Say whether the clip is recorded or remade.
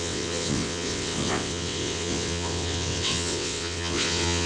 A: remade